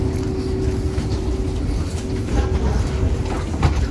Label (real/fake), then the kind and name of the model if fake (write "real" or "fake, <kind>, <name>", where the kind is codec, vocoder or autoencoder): real